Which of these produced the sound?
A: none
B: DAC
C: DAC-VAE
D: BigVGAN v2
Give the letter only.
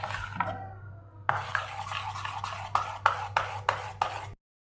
A